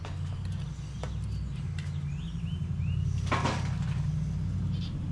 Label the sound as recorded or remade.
recorded